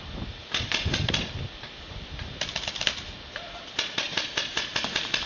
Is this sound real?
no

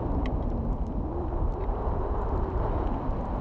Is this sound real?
yes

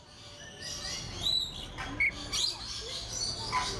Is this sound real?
yes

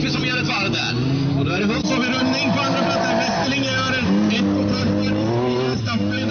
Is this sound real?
yes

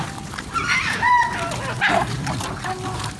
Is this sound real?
yes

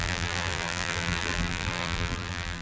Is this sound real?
no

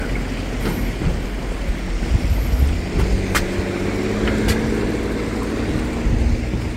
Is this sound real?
yes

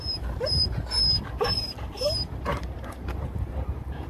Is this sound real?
no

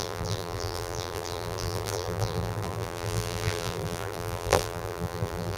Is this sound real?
no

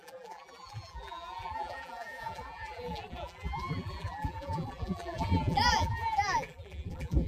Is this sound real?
no